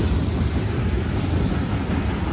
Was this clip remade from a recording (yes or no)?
no